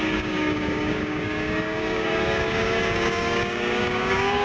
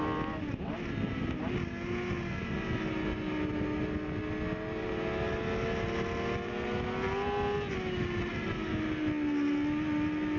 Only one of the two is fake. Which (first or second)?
first